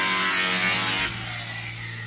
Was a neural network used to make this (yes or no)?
no